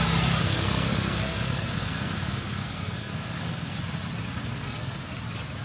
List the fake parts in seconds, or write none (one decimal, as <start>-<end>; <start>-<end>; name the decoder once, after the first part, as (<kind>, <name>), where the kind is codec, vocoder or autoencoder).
0.4-3.8 (codec, SNAC); 4.4-5.1